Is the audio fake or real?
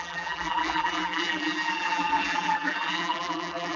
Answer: fake